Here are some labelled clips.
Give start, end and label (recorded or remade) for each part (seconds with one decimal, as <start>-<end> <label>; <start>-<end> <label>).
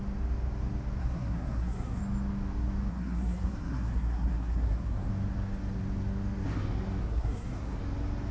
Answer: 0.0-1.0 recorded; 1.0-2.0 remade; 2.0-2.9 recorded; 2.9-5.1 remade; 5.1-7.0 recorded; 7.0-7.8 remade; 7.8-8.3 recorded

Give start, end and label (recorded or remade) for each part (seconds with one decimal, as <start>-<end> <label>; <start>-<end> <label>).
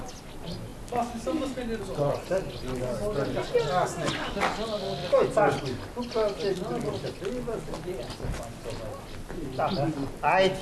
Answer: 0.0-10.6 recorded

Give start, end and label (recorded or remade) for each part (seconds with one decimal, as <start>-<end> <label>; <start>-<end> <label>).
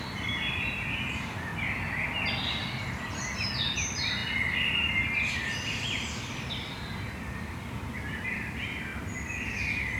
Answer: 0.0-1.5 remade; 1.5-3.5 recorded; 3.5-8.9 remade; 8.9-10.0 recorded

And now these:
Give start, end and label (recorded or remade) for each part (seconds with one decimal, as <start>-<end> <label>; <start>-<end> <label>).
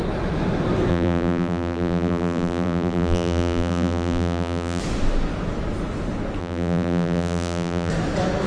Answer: 0.0-0.9 recorded; 0.9-4.8 remade; 4.8-6.4 recorded; 6.4-7.9 remade; 7.9-8.5 recorded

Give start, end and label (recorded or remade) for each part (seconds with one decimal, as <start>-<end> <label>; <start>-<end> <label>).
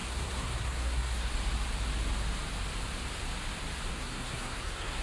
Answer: 0.0-1.3 remade; 1.3-3.9 recorded; 3.9-5.0 remade